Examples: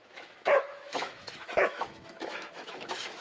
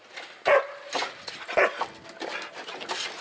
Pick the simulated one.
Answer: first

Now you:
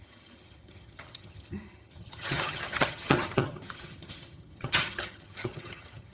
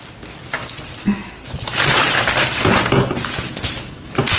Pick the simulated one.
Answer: first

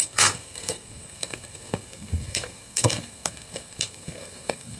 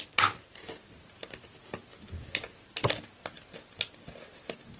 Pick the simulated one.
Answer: first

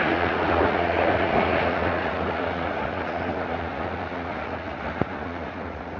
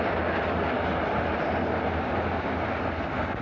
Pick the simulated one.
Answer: first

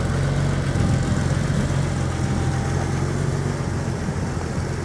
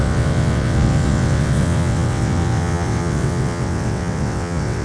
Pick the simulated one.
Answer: second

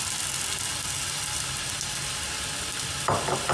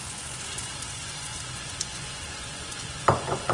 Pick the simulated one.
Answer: second